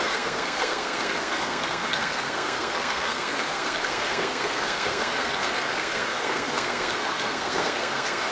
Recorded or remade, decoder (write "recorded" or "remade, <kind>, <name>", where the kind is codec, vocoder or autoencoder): remade, codec, SNAC